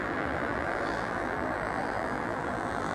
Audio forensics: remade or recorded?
remade